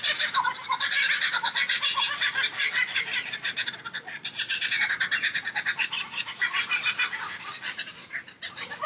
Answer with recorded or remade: recorded